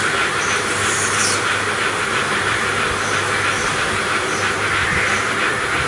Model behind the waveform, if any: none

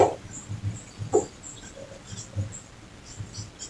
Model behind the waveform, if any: none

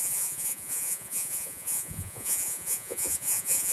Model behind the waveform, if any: vocoder, Vocos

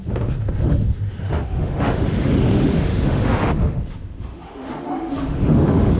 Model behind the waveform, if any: autoencoder, DAC-VAE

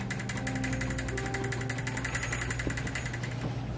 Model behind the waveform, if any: none